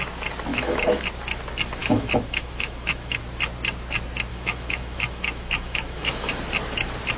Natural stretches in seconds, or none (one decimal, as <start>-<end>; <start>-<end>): 0.0-0.5; 1.0-1.8; 3.2-4.3; 6.3-7.2

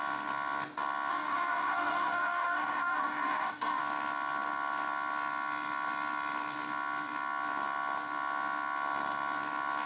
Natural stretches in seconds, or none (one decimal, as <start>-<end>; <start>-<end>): 0.0-1.1; 3.8-9.9

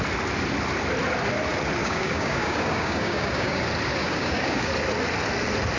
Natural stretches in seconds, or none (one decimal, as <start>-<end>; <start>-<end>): 0.0-1.8; 3.6-4.0; 4.7-5.8

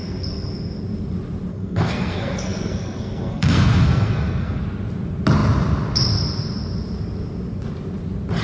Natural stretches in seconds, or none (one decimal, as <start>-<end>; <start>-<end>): 0.8-1.5; 4.6-8.4

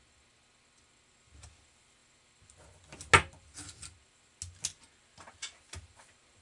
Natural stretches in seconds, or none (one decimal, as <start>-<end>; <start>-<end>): 0.0-6.4

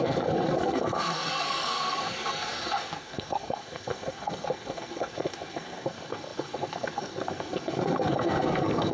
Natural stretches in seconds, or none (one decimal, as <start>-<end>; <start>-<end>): none

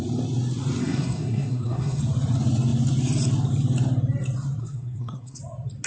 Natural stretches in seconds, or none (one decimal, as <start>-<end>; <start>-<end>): 0.0-0.8; 2.0-4.6; 5.4-5.9